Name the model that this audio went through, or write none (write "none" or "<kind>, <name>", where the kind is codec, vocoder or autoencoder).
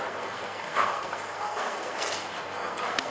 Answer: codec, SNAC